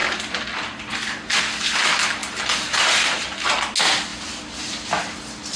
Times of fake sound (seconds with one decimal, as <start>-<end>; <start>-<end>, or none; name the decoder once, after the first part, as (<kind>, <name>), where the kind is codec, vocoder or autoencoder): 2.2-3.5 (vocoder, BigVGAN v2)